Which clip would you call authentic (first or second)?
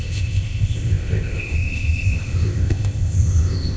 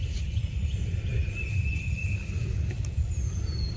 second